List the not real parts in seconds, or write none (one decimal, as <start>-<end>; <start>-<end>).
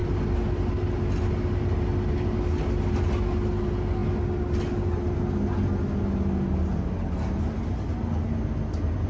none